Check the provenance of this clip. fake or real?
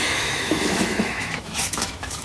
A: fake